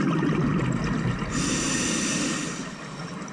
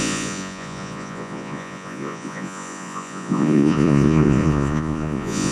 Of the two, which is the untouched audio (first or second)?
first